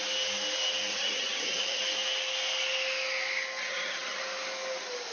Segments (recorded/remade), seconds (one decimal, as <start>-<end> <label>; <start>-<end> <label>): 0.0-0.9 recorded; 0.9-1.8 remade; 1.8-3.6 recorded; 3.6-4.2 remade; 4.2-5.1 recorded